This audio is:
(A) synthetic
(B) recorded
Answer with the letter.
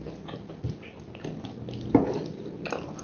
B